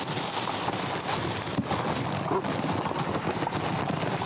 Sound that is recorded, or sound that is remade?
recorded